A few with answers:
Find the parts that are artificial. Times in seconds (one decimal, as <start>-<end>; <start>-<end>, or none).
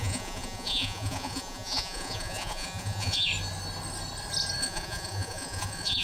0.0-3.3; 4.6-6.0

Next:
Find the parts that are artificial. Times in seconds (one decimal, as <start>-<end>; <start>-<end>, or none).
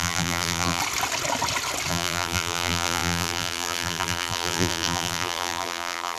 0.0-0.8; 1.9-6.2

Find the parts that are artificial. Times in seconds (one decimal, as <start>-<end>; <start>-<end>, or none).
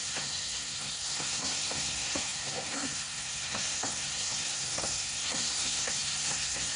0.0-6.8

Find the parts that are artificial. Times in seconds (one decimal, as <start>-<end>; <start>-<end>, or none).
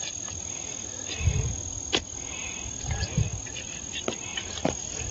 4.3-5.1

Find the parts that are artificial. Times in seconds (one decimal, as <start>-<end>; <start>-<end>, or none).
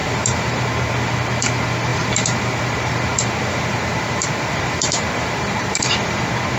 0.0-0.6; 1.9-5.9